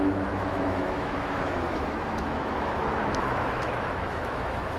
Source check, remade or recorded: remade